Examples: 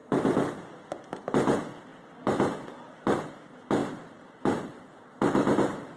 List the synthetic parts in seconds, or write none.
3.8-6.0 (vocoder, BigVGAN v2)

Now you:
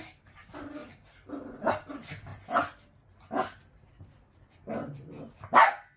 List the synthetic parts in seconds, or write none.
none